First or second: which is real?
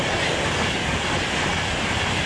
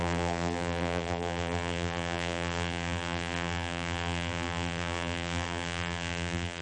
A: first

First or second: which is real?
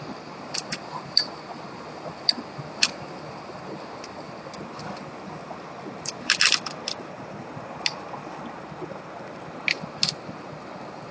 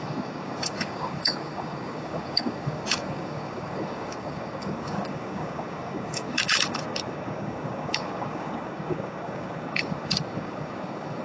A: first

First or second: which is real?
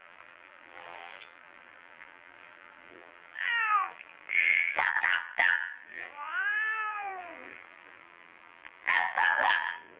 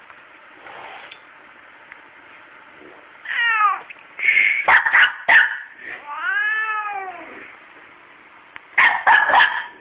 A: second